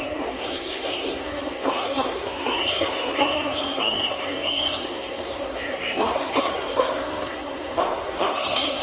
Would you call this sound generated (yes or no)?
yes